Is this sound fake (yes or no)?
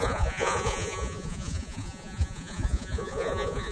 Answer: yes